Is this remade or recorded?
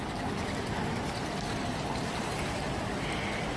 recorded